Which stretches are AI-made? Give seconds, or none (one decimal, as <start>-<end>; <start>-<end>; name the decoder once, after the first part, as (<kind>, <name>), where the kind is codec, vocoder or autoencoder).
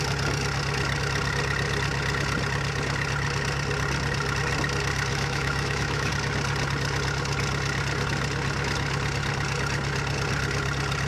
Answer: 5.1-6.1 (autoencoder, DAC-VAE)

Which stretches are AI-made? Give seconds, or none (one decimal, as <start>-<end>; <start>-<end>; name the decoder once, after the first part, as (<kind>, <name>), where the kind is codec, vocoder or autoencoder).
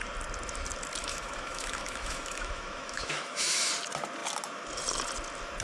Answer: 1.0-3.7 (autoencoder, DAC-VAE)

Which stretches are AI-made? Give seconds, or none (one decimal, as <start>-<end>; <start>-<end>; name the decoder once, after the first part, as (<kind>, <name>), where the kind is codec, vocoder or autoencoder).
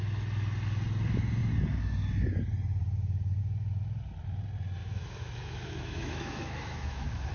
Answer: 4.8-7.3 (autoencoder, DAC-VAE)